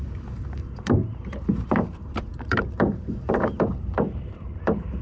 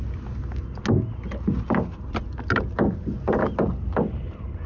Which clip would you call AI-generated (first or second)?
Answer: first